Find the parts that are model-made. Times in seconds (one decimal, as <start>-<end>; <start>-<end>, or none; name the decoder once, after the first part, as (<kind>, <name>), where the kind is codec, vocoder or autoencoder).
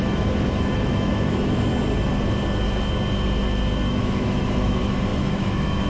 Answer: 0.0-1.7 (autoencoder, DAC-VAE); 3.9-5.9